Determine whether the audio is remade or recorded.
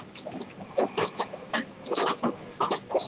remade